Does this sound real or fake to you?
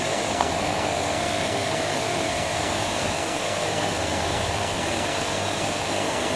fake